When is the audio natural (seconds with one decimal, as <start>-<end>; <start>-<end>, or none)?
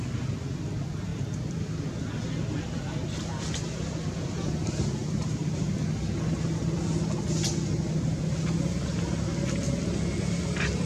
0.0-1.1; 1.9-10.9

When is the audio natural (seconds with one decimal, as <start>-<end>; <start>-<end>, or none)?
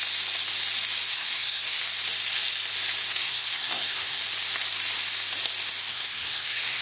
0.0-1.1; 1.8-3.2; 4.2-5.9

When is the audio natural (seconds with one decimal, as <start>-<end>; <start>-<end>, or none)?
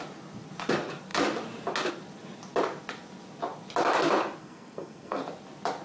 0.0-4.4; 5.2-5.8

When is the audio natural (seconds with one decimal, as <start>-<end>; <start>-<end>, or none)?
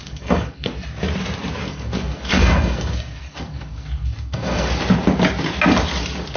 0.7-1.7; 4.7-6.4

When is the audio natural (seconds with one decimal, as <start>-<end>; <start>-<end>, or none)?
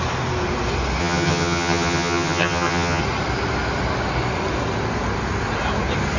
0.0-1.0; 3.0-6.2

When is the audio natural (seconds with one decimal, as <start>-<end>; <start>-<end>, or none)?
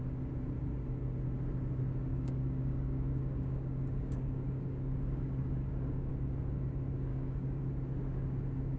0.0-2.1; 6.1-7.1; 7.6-8.8